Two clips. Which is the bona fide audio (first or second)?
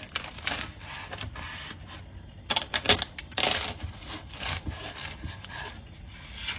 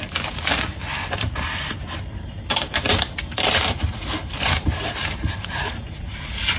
first